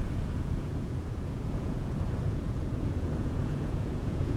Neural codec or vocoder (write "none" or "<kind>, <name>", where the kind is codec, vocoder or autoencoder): vocoder, Vocos